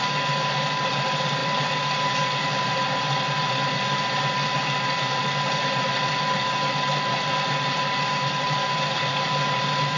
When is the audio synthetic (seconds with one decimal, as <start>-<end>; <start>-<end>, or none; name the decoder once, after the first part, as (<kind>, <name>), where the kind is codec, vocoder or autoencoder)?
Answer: none